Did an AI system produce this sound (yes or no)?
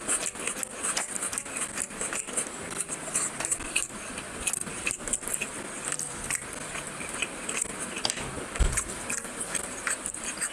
yes